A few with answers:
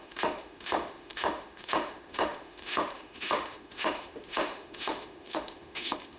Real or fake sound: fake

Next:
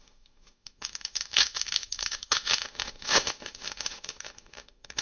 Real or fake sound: fake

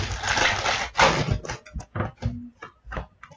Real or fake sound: real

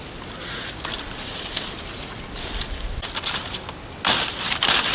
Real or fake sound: real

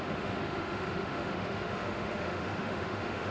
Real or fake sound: fake